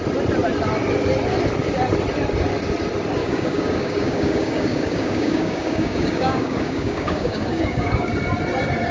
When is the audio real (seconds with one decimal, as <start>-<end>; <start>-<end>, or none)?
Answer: 0.0-3.2; 8.1-8.9